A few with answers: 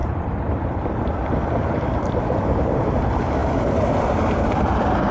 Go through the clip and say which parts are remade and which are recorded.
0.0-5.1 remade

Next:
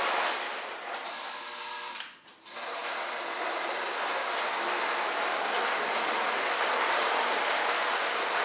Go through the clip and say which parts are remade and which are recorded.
0.0-8.4 recorded

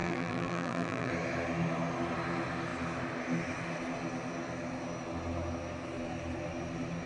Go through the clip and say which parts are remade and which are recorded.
0.0-1.1 remade; 1.1-7.1 recorded

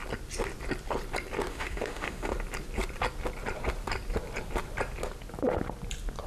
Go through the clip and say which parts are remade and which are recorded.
0.0-1.5 recorded; 1.5-2.3 remade; 2.3-6.3 recorded

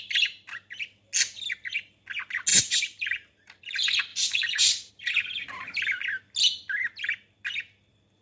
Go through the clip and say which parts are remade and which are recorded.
0.0-2.5 recorded; 2.5-3.6 remade; 3.6-4.1 recorded; 4.1-4.9 remade; 4.9-8.2 recorded